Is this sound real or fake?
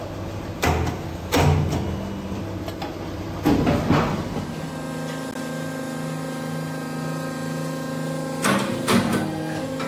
real